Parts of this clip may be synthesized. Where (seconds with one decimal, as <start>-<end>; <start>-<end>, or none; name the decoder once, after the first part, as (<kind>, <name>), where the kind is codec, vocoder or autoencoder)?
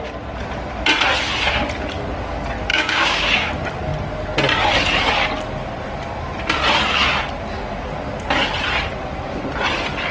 2.7-3.5 (codec, DAC)